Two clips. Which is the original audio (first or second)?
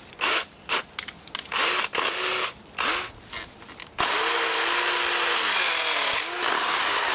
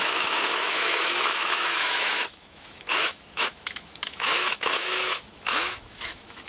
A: first